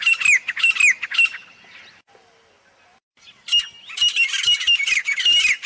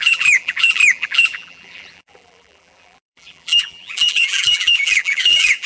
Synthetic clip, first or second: second